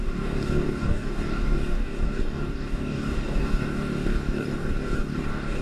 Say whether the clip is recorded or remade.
remade